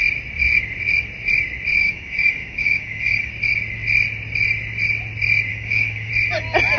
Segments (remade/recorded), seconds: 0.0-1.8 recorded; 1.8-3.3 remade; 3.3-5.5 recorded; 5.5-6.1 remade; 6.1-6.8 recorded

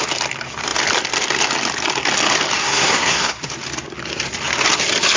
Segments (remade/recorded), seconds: 0.0-2.6 recorded; 2.6-3.5 remade; 3.5-5.2 recorded

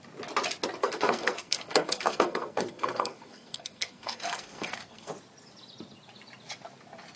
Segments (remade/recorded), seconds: 0.0-0.8 recorded; 0.8-5.1 remade; 5.1-7.2 recorded

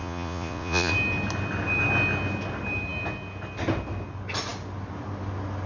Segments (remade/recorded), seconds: 0.0-0.9 remade; 0.9-5.7 recorded

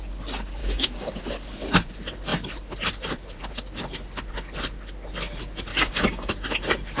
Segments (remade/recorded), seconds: 0.0-0.6 recorded; 0.6-1.2 remade; 1.2-5.7 recorded; 5.7-6.3 remade; 6.3-7.0 recorded